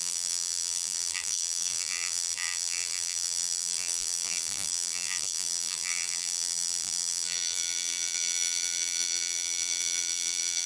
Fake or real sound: fake